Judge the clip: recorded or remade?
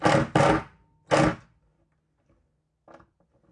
recorded